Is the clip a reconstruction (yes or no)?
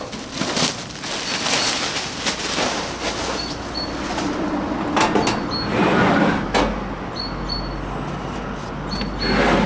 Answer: no